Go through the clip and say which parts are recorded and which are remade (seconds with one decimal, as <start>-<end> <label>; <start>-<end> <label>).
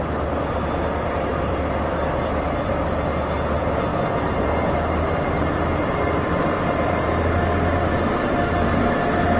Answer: 0.0-1.3 recorded; 1.3-2.7 remade; 2.7-3.9 recorded; 3.9-7.0 remade; 7.0-9.4 recorded